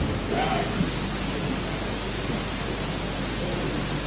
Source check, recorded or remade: recorded